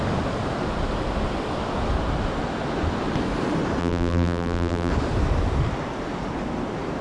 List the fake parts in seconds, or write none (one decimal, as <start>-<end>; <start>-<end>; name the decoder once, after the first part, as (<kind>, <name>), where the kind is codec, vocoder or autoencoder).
3.8-4.9 (vocoder, BigVGAN v2)